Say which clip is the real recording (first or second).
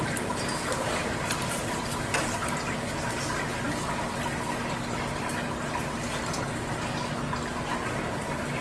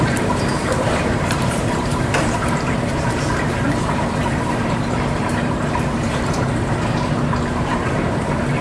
first